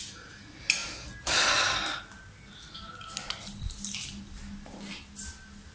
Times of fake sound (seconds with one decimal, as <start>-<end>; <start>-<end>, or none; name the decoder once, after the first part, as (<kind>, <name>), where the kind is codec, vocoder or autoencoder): none